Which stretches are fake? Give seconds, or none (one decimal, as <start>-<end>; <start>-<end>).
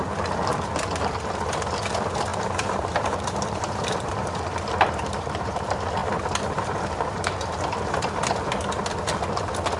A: 2.3-5.6; 6.0-8.2